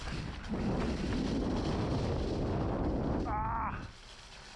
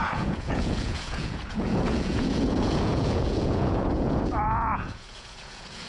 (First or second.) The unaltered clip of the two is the first